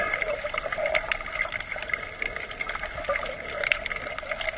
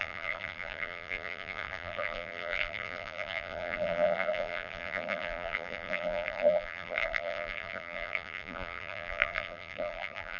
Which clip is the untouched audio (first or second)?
first